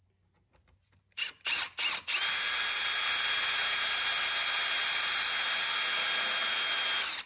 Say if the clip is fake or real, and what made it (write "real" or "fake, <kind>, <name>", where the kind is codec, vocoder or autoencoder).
real